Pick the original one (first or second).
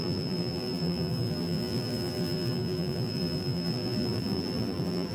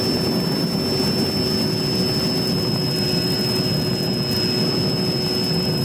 second